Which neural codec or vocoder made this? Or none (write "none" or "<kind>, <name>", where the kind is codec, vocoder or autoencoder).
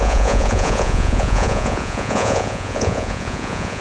vocoder, Vocos